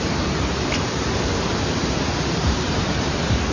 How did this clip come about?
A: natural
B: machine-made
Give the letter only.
B